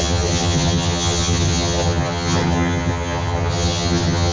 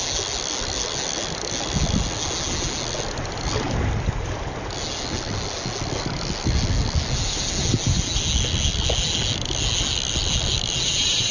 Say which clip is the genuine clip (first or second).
second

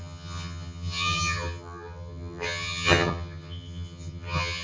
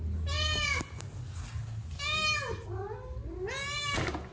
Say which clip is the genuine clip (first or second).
second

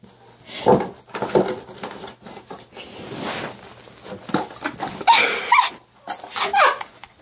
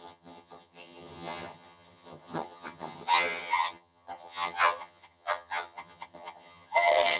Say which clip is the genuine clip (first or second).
first